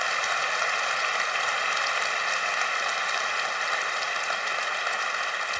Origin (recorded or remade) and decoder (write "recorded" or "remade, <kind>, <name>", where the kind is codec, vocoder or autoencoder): recorded